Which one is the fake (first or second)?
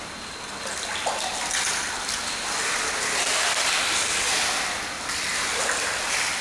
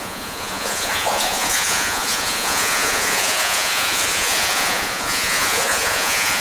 second